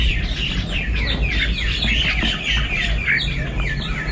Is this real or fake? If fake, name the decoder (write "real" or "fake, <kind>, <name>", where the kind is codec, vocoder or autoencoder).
real